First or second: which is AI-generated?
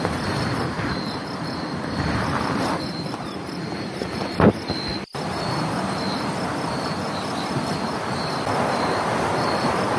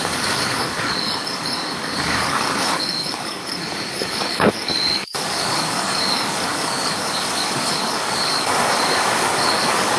second